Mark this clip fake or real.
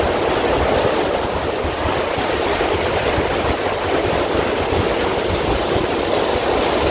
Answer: real